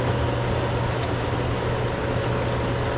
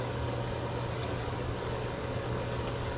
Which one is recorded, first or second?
first